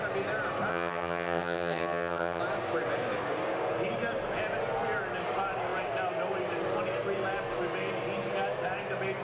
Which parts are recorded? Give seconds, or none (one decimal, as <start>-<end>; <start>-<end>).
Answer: 0.0-0.7; 2.4-9.2